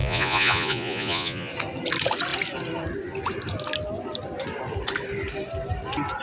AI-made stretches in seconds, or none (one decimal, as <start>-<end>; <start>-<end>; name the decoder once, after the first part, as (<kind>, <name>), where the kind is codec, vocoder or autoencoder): 0.0-1.5 (vocoder, Vocos)